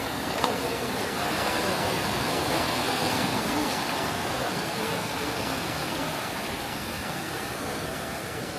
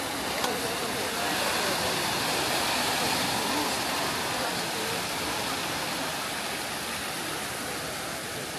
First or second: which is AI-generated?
first